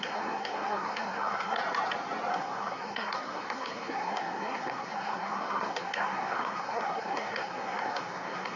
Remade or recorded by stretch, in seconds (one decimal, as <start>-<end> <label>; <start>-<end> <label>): 0.0-1.6 remade; 1.6-2.3 recorded; 2.3-8.6 remade